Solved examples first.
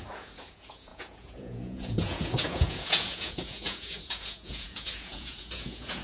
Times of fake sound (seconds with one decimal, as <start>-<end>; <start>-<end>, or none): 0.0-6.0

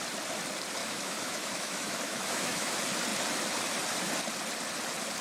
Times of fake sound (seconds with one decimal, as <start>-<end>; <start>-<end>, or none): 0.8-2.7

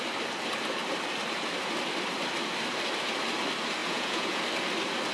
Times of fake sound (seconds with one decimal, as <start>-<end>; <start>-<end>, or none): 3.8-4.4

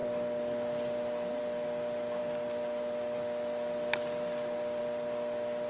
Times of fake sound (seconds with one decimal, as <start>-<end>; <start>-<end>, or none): none

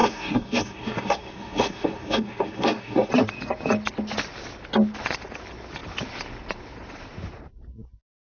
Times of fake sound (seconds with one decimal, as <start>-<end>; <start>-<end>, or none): 0.0-3.1

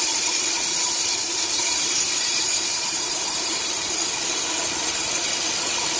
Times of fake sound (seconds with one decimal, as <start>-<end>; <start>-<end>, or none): 1.2-4.0

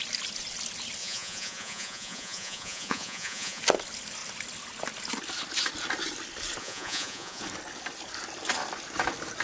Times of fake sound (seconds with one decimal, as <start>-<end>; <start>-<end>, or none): 1.0-3.6; 6.6-7.4

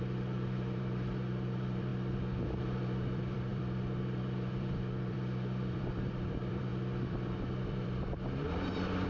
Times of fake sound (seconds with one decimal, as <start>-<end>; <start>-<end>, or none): 0.0-1.9; 2.6-6.7; 7.7-9.1